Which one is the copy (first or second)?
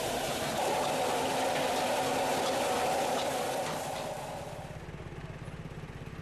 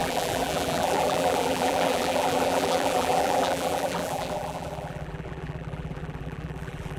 second